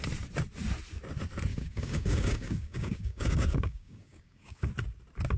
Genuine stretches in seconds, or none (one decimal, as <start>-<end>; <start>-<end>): 0.0-1.5; 4.7-5.4